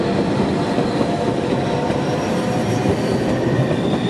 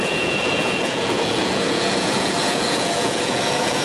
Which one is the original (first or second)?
first